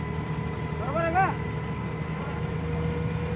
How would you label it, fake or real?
real